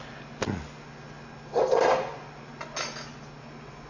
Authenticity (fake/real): real